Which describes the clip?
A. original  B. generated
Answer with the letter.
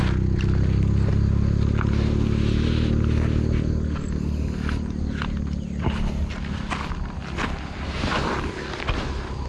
A